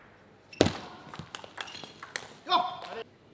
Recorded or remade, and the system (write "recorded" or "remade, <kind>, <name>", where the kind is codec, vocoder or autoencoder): recorded